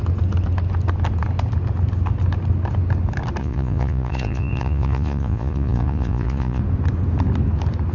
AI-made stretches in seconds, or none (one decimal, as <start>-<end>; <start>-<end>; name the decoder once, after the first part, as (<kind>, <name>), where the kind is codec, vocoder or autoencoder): 3.4-6.6 (vocoder, Vocos)